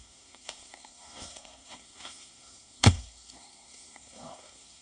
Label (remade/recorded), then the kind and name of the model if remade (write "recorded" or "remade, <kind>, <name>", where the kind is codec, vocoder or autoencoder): remade, codec, SNAC